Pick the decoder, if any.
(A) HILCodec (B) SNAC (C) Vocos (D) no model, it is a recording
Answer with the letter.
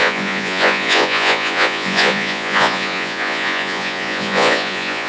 C